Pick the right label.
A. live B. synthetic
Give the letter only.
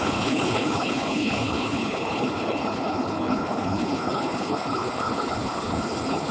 B